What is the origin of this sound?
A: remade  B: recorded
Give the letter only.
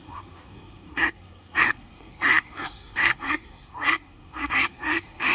A